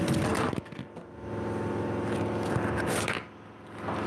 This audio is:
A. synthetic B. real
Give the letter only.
B